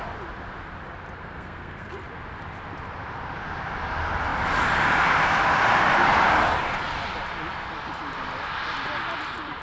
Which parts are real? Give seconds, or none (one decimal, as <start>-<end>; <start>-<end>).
0.0-1.2; 1.9-9.6